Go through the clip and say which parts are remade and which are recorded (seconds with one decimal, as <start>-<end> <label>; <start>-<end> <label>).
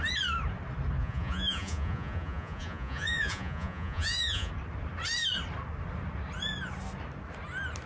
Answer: 0.0-1.0 recorded; 1.0-4.5 remade; 4.5-7.9 recorded